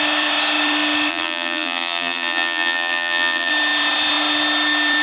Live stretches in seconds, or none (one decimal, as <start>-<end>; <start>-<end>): 0.0-1.1; 3.5-5.0